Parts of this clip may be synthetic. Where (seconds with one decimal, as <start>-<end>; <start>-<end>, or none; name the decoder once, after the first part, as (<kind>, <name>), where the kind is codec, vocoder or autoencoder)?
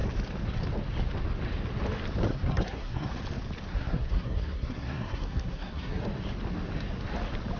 2.3-3.1 (codec, SNAC); 3.7-6.0